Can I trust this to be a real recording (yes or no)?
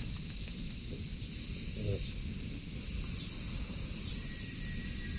yes